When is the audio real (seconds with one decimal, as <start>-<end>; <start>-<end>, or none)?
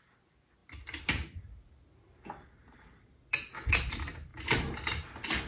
0.0-5.5